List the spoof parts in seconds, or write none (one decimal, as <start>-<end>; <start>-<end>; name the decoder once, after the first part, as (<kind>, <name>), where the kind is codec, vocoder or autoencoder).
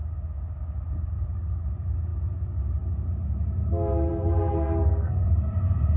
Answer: 4.1-5.1 (codec, SNAC)